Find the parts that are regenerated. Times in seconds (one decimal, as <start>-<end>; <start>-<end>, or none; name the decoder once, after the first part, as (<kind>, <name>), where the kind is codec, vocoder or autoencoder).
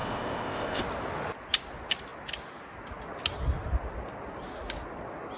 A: 0.0-0.8 (codec, ZipCodec)